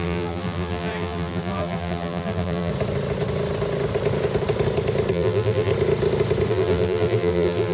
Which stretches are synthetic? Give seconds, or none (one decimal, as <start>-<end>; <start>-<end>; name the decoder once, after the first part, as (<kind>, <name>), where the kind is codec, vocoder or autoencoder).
0.0-2.7 (vocoder, BigVGAN v2); 5.1-5.7; 6.5-7.7